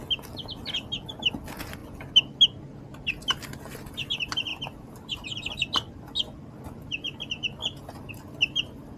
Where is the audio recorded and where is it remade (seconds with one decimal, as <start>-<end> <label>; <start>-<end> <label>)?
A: 0.0-9.0 recorded